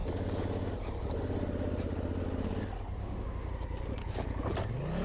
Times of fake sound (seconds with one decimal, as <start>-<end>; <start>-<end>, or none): 3.0-3.5

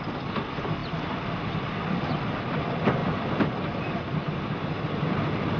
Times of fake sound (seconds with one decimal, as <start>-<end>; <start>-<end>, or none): none